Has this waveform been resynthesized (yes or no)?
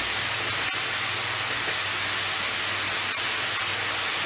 no